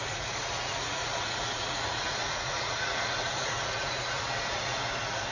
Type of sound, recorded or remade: remade